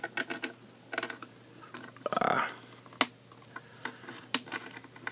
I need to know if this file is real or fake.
real